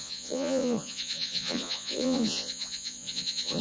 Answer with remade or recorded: remade